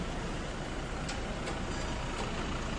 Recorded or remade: recorded